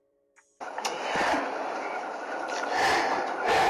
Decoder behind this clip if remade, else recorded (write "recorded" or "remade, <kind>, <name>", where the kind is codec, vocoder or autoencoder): remade, vocoder, BigVGAN v2